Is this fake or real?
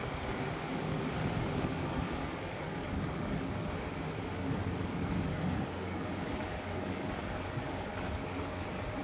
fake